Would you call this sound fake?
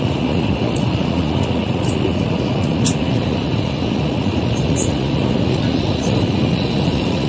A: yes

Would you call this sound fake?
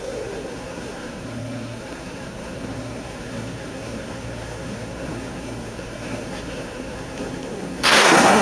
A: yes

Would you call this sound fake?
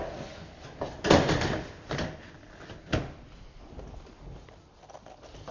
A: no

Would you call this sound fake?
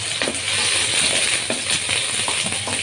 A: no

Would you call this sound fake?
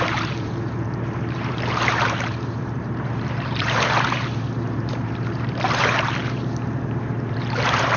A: yes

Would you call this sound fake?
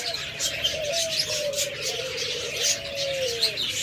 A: no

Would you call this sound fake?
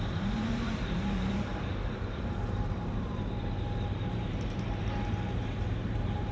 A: yes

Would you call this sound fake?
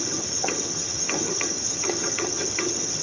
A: yes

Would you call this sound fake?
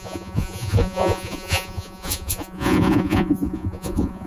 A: yes